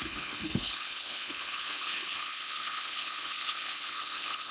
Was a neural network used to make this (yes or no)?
yes